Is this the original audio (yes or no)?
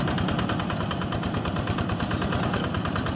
yes